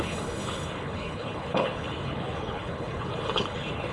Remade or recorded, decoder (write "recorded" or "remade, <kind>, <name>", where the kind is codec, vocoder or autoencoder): remade, codec, HILCodec